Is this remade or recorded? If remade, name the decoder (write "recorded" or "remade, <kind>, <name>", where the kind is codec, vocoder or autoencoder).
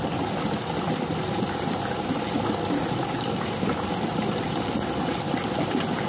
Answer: recorded